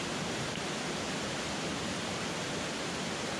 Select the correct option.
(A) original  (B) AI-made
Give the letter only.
A